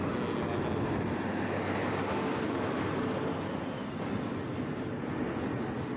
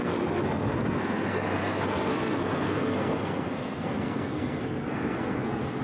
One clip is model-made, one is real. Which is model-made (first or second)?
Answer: second